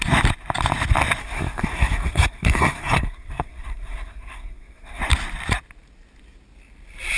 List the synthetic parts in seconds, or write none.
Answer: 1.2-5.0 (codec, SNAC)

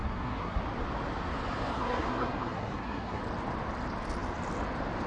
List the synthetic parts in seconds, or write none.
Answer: 0.0-0.6 (codec, SNAC); 1.7-3.2

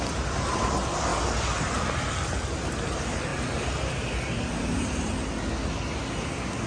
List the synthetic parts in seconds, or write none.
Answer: none

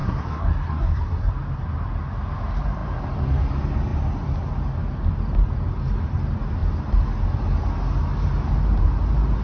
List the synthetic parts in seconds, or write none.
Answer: 0.0-1.3 (codec, SNAC)

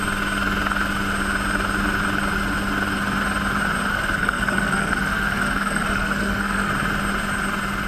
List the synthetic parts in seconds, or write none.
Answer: 3.9-6.7 (codec, SNAC)

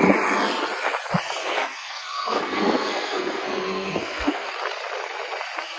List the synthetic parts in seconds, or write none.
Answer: 1.4-4.5 (codec, SNAC)

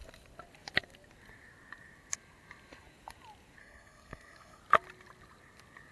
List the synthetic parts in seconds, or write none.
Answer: 3.6-4.6 (codec, SNAC)

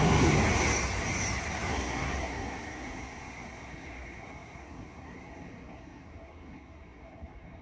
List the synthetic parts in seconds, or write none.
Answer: 0.0-0.4 (codec, SNAC); 1.7-7.6